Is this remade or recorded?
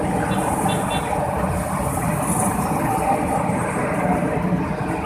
recorded